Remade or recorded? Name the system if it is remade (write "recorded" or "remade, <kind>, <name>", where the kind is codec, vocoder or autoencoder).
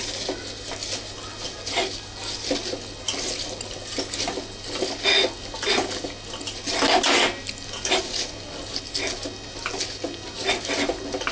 recorded